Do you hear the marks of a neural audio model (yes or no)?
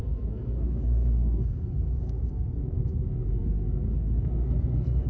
yes